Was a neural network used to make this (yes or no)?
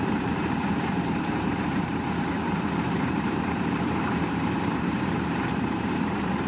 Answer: yes